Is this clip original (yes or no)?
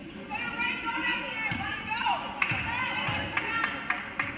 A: yes